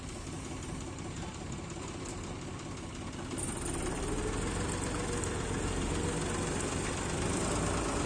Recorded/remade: recorded